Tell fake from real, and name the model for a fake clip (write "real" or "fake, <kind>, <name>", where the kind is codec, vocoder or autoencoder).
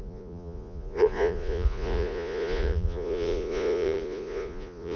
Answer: fake, vocoder, Vocos